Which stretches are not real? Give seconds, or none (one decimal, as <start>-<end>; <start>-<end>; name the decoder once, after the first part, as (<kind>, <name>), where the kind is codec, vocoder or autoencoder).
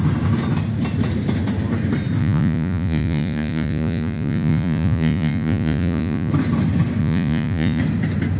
2.2-6.3 (vocoder, Vocos); 7.0-7.8